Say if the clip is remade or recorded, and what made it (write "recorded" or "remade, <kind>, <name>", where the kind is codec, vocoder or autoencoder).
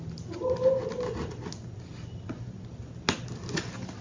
recorded